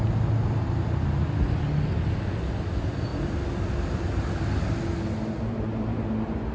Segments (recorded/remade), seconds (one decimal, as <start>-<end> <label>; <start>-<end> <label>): 0.0-6.5 recorded